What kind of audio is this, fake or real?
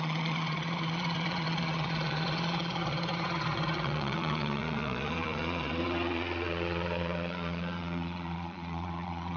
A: fake